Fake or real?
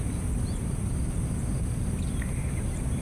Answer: real